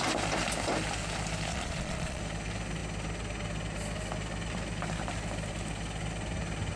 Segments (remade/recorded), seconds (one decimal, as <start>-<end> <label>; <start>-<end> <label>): 0.0-1.5 recorded; 1.5-2.2 remade; 2.2-6.8 recorded